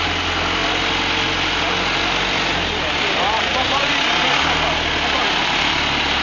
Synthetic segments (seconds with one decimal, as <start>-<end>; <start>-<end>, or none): none